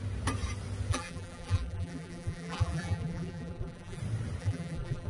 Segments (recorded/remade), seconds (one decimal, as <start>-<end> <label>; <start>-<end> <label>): 0.0-0.9 recorded; 0.9-4.0 remade; 4.0-4.4 recorded; 4.4-5.1 remade